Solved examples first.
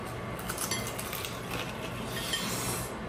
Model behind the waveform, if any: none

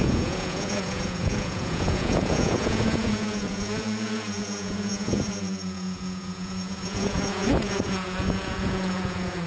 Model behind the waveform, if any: vocoder, Vocos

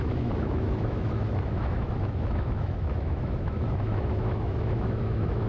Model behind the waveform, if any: autoencoder, DAC-VAE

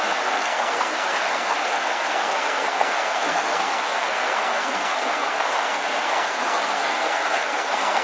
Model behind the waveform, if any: codec, SNAC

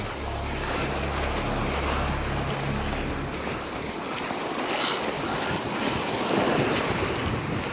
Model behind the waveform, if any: none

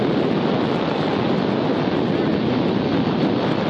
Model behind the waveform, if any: none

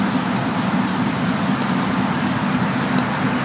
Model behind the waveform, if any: none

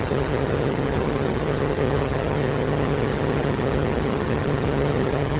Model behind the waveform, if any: vocoder, HiFi-GAN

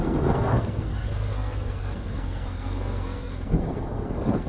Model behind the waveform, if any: codec, SNAC